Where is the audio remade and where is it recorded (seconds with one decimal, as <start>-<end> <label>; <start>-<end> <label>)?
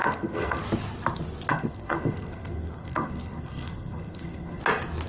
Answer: 0.0-0.6 remade; 0.6-1.5 recorded; 1.5-4.6 remade; 4.6-5.1 recorded